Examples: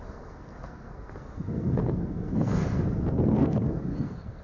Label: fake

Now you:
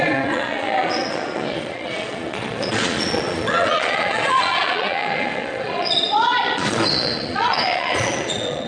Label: fake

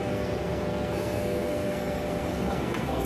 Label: fake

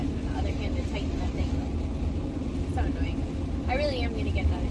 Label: real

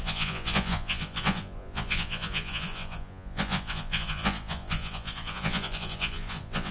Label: fake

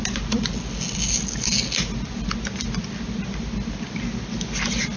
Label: real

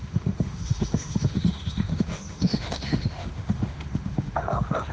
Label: fake